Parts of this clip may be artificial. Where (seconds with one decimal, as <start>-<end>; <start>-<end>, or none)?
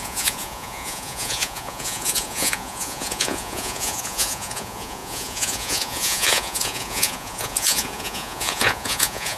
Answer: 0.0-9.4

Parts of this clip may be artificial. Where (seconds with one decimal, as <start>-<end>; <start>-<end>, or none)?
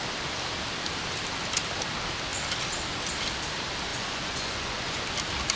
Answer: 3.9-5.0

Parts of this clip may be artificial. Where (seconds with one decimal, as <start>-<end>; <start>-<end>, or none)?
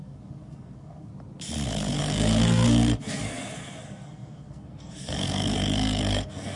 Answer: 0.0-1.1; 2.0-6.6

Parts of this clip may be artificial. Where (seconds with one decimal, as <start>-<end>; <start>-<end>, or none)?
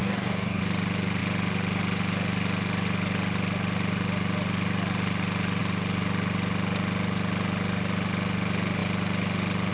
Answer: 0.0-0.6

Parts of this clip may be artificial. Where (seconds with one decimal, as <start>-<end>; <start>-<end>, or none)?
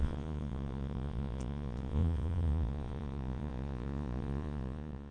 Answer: 0.0-5.1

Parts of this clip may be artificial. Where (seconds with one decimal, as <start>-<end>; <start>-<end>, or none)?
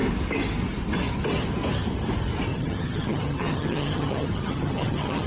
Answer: 2.5-5.3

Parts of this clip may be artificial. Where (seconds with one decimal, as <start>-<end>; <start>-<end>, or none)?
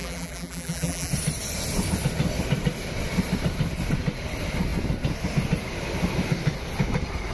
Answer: 0.0-1.1